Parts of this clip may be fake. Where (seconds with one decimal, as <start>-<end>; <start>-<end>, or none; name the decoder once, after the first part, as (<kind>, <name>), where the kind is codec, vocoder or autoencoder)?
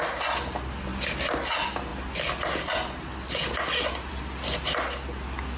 none